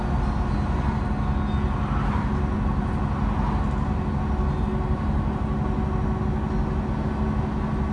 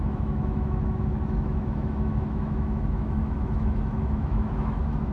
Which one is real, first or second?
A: first